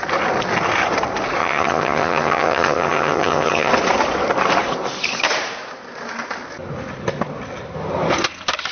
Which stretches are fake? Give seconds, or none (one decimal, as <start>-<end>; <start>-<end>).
1.4-3.7